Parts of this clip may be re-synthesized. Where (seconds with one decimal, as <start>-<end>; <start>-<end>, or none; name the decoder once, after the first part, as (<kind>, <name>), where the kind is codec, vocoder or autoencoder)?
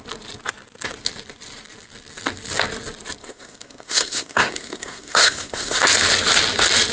3.2-5.8 (codec, SNAC)